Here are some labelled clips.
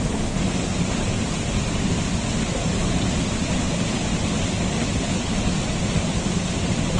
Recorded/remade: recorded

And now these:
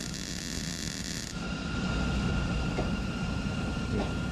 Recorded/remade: remade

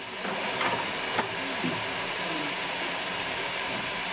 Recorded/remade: recorded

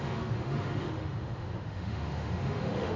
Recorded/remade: remade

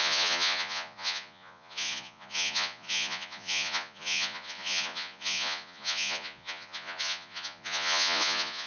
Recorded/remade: remade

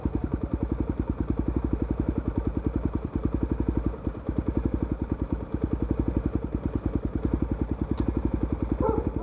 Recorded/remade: recorded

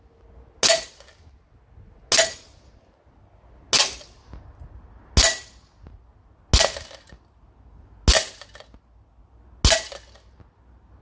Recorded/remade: recorded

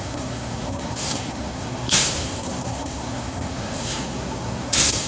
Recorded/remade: remade